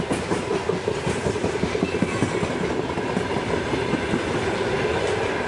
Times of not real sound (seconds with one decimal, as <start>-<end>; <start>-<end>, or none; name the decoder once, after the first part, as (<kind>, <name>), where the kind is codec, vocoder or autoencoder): none